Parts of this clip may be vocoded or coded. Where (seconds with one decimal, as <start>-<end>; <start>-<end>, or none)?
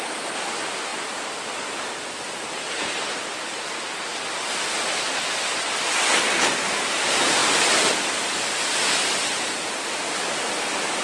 none